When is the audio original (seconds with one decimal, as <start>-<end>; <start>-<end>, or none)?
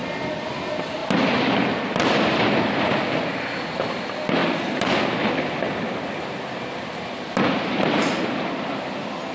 0.0-9.3